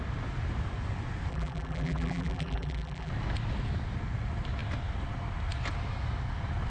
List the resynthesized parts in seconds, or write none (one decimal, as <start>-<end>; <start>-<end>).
1.3-3.1